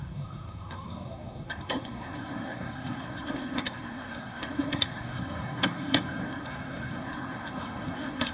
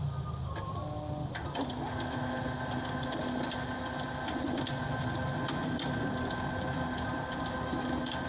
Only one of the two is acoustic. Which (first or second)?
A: second